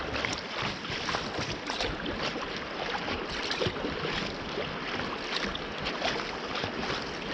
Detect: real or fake real